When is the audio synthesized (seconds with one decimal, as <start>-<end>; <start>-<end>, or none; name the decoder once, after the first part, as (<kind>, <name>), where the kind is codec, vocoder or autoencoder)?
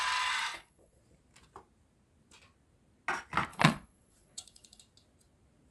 0.5-1.0 (vocoder, Vocos); 3.5-4.8